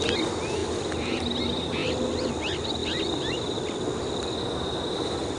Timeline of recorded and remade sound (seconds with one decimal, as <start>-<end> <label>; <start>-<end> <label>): 0.0-5.4 recorded